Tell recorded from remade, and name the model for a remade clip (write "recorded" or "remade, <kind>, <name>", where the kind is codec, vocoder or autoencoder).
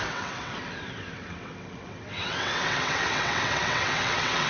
remade, vocoder, WaveNeXt